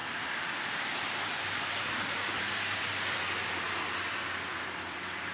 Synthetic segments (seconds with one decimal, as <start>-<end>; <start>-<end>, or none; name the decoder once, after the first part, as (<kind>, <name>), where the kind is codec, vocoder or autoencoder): 0.0-3.2 (vocoder, BigVGAN v2); 4.5-5.3